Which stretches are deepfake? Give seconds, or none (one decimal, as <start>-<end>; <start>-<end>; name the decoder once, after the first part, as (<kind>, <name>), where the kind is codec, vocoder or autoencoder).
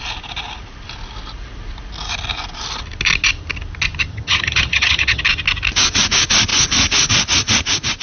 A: 4.1-5.2 (vocoder, HiFi-GAN)